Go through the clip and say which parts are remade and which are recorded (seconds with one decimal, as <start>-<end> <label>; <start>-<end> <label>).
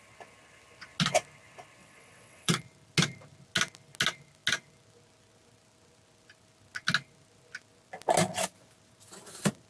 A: 0.0-1.8 recorded; 1.8-2.6 remade; 2.6-9.7 recorded